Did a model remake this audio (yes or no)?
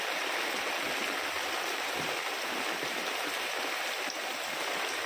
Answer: no